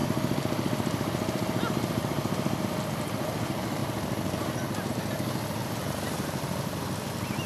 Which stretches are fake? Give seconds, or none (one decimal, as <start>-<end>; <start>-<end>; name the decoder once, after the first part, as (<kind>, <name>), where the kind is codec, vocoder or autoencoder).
5.8-6.8 (vocoder, BigVGAN v2)